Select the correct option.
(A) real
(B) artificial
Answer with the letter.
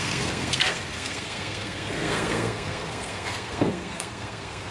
B